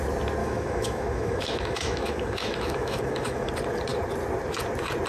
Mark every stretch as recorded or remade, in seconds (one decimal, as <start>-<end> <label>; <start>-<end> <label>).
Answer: 0.0-0.4 recorded; 0.4-3.5 remade; 3.5-5.1 recorded